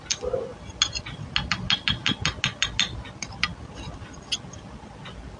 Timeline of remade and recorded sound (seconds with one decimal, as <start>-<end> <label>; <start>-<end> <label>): 0.0-5.4 recorded